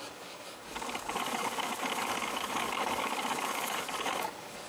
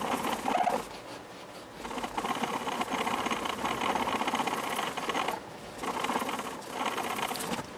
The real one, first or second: second